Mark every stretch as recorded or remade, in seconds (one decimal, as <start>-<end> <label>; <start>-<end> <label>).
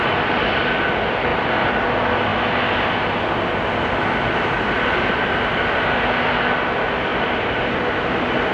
0.0-8.5 recorded